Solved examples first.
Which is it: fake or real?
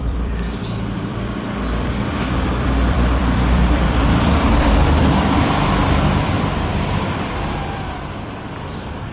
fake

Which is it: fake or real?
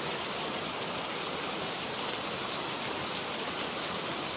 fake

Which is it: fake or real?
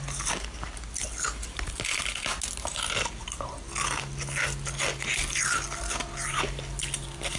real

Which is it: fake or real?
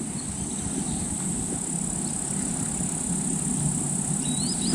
real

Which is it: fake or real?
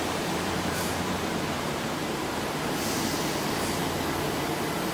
fake